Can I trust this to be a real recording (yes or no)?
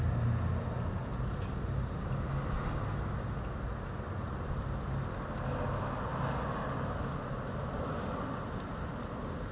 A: yes